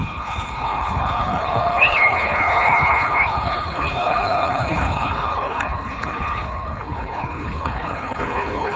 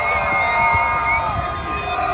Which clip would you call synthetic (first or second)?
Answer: first